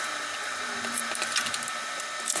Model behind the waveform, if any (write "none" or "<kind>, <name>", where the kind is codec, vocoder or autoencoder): none